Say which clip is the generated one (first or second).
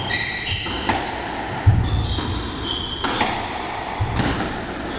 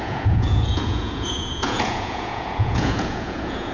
second